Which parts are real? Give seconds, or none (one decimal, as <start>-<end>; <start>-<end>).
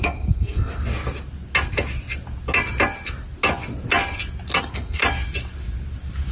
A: 0.8-4.6; 5.0-6.3